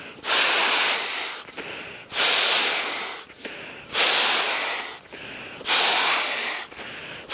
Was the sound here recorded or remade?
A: recorded